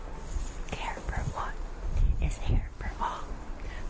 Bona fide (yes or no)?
yes